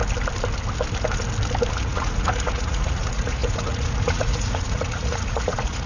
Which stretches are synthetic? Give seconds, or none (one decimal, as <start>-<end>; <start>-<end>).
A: 1.7-5.9

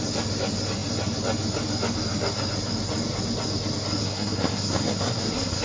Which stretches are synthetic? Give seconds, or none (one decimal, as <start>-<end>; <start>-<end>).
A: 4.0-5.6

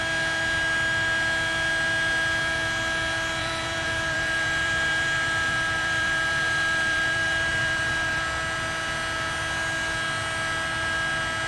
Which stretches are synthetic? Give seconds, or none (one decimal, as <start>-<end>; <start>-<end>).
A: 3.4-8.2

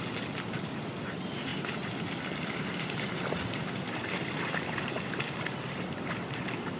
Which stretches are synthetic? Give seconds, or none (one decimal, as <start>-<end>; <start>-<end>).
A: 0.0-1.5; 2.1-6.8